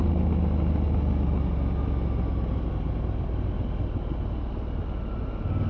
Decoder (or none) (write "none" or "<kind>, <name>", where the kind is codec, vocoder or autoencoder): none